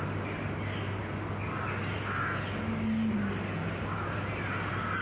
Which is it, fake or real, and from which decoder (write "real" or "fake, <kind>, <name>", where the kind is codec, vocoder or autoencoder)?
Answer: real